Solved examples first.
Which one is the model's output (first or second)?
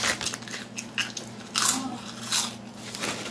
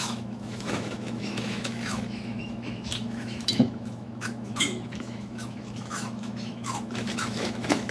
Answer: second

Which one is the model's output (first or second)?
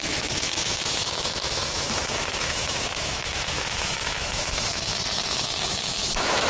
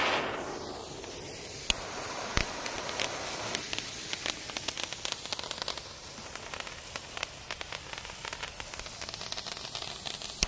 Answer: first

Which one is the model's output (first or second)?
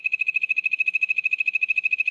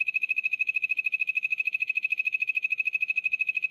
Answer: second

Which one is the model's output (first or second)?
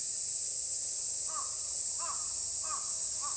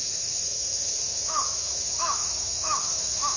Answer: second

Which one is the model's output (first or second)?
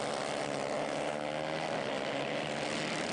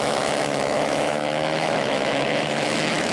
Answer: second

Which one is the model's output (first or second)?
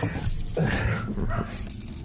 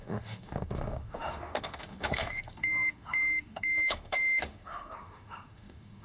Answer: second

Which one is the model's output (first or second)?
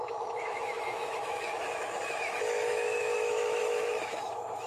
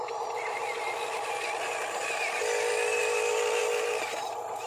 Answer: first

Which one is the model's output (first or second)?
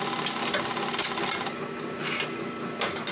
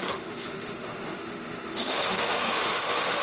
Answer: second